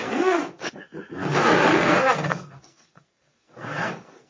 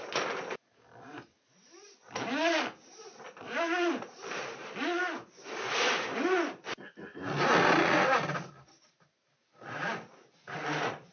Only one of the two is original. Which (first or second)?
second